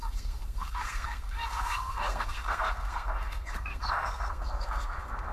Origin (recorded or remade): remade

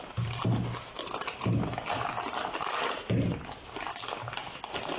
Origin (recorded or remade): recorded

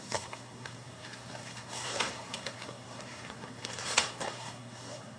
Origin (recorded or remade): remade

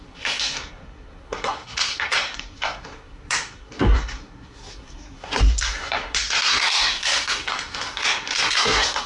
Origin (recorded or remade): remade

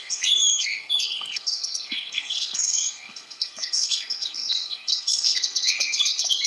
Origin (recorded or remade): remade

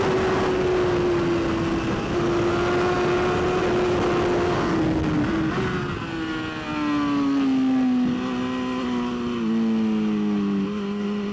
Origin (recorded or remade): recorded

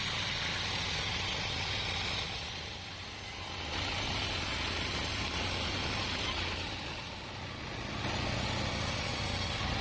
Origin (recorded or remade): recorded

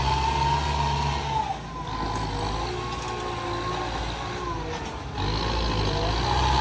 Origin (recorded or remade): recorded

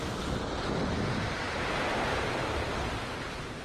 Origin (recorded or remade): recorded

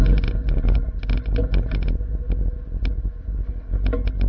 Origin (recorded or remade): recorded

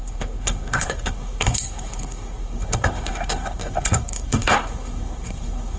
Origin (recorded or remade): remade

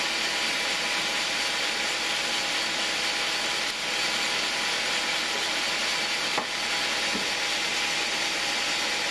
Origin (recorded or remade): recorded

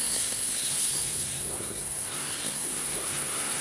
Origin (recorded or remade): remade